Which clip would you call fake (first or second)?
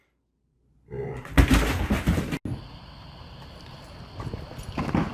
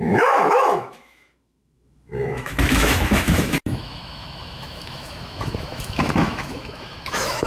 second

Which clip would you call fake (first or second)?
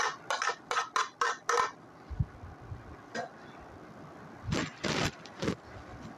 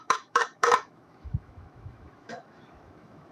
second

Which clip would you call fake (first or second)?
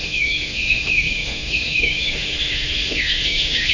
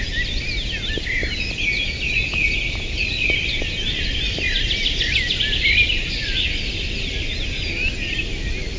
first